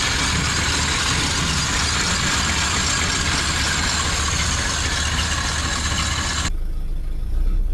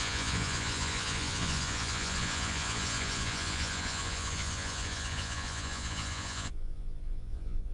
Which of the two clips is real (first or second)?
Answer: first